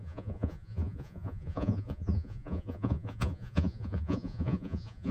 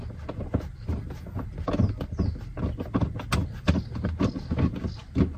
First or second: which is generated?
first